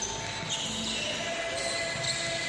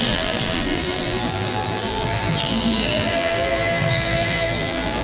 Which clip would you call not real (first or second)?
second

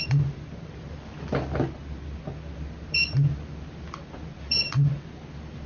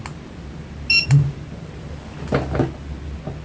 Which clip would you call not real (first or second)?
first